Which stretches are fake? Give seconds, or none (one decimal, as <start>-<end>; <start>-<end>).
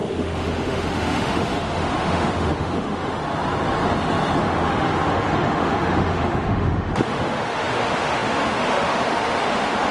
0.0-3.2; 4.4-9.9